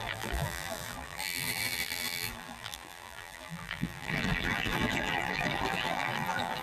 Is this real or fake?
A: fake